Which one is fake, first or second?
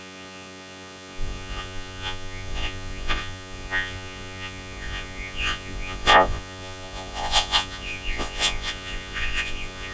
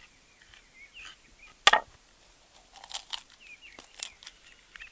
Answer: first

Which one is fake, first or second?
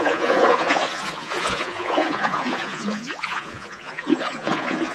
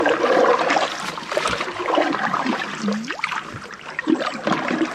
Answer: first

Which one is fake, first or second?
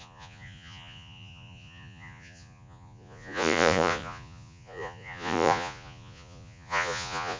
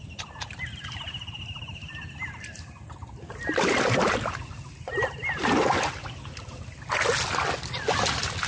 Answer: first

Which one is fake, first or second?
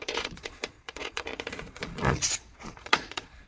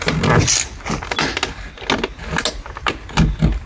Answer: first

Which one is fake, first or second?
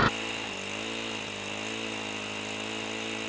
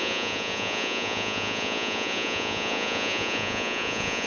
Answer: second